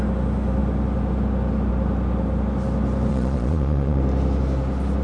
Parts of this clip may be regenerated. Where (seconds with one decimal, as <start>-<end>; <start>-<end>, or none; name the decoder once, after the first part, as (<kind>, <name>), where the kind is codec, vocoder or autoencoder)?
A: 3.1-4.0 (vocoder, Vocos)